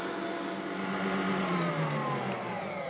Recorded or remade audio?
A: recorded